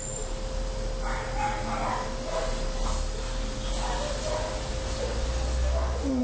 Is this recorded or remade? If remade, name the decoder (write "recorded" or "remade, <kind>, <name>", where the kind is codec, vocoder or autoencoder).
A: recorded